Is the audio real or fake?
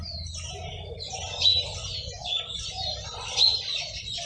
real